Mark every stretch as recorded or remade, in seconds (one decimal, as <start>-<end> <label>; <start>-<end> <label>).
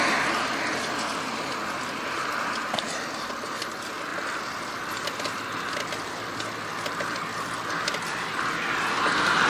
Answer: 0.0-9.5 recorded